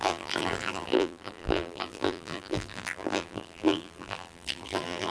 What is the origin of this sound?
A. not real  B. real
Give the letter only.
A